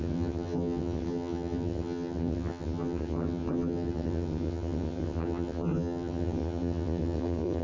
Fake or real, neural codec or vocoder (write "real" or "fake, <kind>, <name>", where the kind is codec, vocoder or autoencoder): fake, vocoder, HiFi-GAN